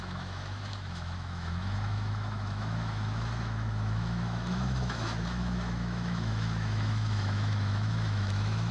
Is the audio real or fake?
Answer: fake